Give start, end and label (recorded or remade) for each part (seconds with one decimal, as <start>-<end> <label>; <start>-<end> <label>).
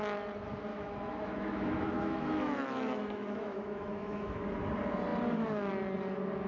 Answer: 0.0-0.7 recorded; 0.7-4.5 remade; 4.5-6.5 recorded